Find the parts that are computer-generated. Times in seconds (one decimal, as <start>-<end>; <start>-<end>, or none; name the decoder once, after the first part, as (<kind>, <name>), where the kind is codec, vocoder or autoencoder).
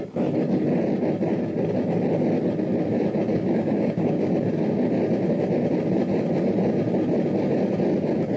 3.3-4.3 (codec, DAC)